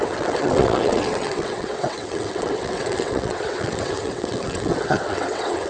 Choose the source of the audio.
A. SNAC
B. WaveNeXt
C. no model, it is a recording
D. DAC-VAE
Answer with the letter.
B